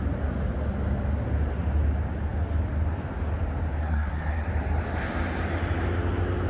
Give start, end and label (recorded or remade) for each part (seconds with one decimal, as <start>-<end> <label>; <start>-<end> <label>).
0.0-3.8 recorded; 3.8-4.5 remade; 4.5-6.5 recorded